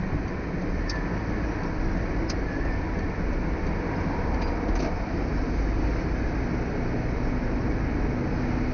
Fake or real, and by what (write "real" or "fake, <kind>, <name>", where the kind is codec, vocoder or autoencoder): real